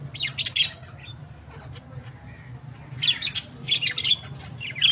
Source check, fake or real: real